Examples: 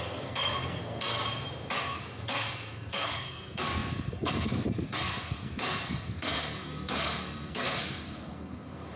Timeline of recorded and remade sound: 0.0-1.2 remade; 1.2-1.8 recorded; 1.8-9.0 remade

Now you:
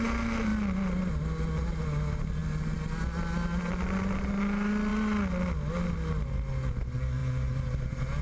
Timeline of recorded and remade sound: 0.0-8.2 recorded

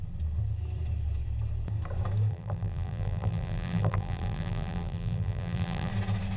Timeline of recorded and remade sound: 0.0-2.3 recorded; 2.3-5.9 remade; 5.9-6.4 recorded

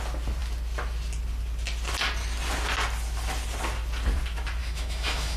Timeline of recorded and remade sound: 0.0-4.6 recorded; 4.6-5.4 remade

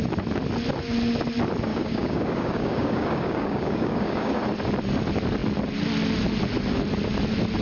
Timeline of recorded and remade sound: 0.0-1.7 recorded; 1.7-4.4 remade; 4.4-7.6 recorded

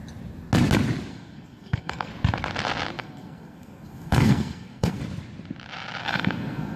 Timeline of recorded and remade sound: 0.0-1.1 recorded; 1.1-2.1 remade; 2.1-3.0 recorded; 3.0-5.0 remade; 5.0-6.0 recorded; 6.0-6.8 remade

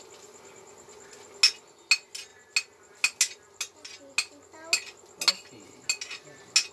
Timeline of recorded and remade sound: 0.0-6.7 recorded

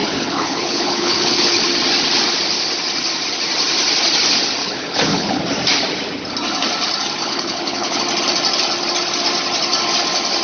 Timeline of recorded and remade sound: 0.0-1.6 remade; 1.6-4.6 recorded; 4.6-5.4 remade; 5.4-7.2 recorded; 7.2-8.0 remade; 8.0-10.4 recorded